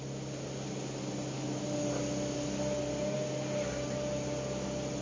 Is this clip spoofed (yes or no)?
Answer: no